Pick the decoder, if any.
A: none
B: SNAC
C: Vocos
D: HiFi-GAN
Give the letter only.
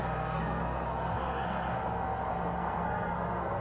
B